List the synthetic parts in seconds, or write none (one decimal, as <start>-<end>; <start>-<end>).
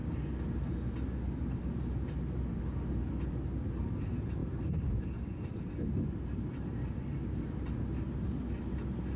none